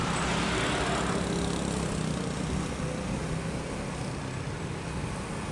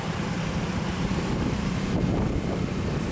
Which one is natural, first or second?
first